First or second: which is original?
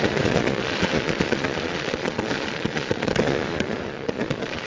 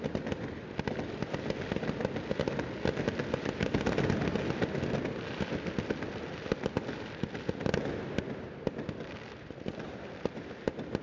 second